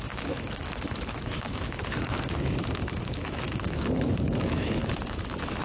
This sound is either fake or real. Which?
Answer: fake